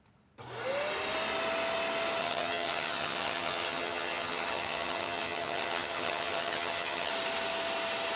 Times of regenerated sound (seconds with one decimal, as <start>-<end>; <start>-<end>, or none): 2.2-7.1